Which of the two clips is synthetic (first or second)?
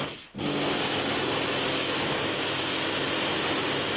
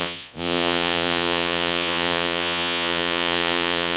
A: second